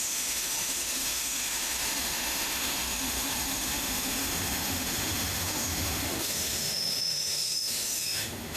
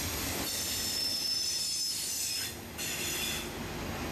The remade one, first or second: first